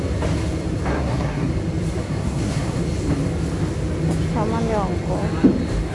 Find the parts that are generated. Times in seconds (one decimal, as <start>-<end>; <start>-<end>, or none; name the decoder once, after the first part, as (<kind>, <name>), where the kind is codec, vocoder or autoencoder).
0.9-1.5 (codec, SNAC); 2.0-2.8